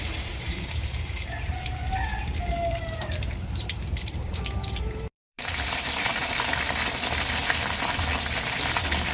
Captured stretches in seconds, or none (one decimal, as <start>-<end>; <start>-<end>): 1.8-2.4; 6.1-9.1